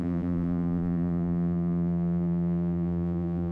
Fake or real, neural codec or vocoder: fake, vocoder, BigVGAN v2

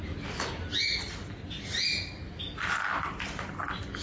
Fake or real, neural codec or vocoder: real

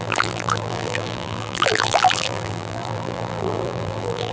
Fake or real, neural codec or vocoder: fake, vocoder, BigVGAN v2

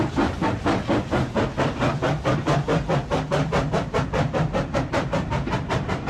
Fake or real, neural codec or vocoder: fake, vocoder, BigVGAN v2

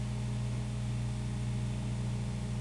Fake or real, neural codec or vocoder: real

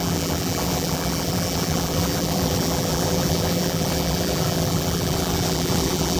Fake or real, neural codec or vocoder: fake, vocoder, BigVGAN v2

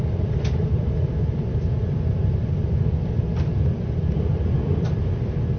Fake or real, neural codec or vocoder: fake, vocoder, BigVGAN v2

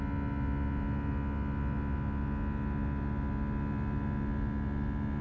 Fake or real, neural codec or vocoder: real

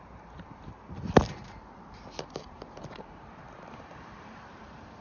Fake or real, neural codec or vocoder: fake, vocoder, BigVGAN v2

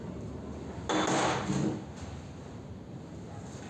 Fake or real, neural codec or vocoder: real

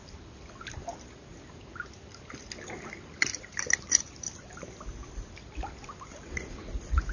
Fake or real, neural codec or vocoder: real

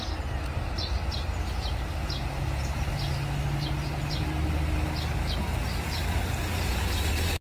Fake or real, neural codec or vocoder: real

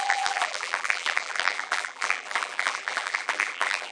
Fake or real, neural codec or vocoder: fake, vocoder, BigVGAN v2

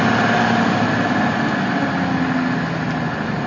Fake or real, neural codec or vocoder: real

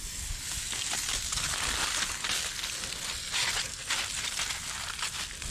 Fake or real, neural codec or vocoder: real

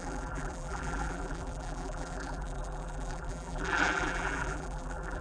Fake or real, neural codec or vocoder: fake, vocoder, BigVGAN v2